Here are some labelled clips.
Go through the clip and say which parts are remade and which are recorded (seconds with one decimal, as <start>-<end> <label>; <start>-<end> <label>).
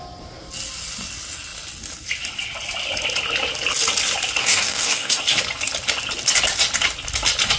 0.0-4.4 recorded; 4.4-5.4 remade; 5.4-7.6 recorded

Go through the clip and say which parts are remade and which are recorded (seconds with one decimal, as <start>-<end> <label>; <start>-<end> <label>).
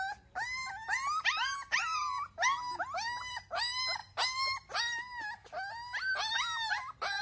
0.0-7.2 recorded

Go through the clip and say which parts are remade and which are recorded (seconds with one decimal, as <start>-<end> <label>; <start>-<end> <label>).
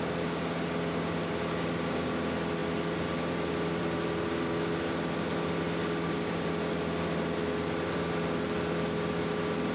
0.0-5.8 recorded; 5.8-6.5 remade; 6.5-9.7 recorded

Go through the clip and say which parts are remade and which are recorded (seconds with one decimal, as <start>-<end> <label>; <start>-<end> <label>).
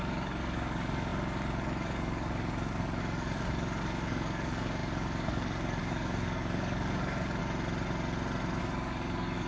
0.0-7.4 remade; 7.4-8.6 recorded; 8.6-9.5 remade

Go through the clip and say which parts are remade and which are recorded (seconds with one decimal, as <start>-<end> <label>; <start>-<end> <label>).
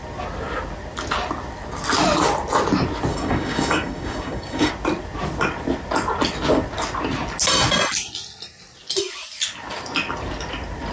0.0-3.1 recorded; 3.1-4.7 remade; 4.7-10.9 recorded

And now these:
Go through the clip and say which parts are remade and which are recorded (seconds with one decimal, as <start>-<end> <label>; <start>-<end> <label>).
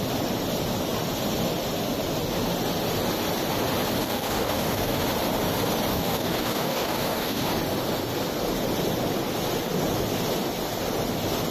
0.0-4.0 recorded; 4.0-5.0 remade; 5.0-5.9 recorded; 5.9-7.5 remade; 7.5-11.5 recorded